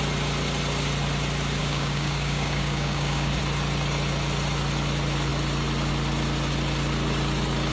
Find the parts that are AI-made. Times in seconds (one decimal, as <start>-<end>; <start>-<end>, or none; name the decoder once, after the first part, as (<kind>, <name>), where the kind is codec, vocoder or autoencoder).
1.6-3.4 (codec, DAC)